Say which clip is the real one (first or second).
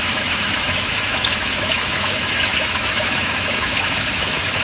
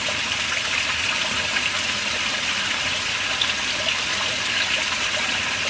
second